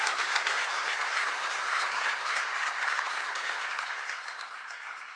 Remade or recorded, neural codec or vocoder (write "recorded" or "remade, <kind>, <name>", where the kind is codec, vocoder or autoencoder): remade, codec, SNAC